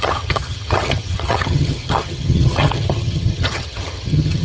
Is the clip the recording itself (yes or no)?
no